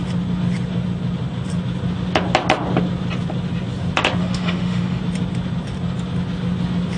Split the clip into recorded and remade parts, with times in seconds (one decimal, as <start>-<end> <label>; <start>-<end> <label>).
0.0-4.2 recorded; 4.2-5.0 remade; 5.0-7.0 recorded